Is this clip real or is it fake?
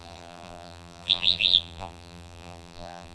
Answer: fake